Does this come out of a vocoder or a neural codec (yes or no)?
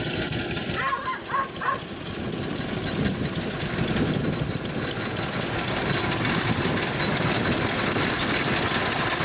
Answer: no